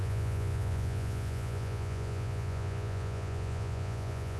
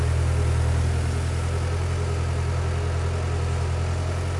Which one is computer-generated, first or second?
first